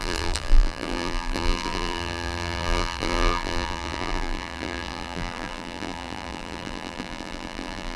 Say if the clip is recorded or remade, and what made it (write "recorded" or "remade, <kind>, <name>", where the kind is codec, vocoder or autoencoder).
remade, vocoder, BigVGAN v2